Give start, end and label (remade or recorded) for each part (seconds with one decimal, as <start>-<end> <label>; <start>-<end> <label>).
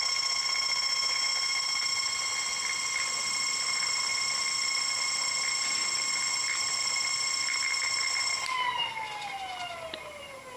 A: 0.0-10.6 recorded